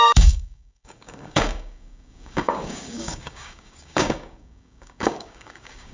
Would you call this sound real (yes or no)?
no